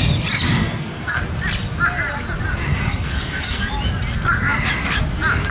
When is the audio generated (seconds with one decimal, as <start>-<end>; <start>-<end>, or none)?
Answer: 0.6-1.2; 2.7-3.7